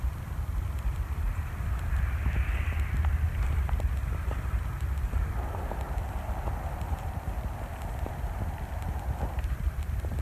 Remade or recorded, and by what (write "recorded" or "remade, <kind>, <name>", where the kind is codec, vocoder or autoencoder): remade, vocoder, BigVGAN v2